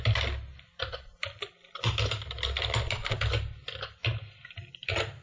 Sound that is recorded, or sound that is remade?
recorded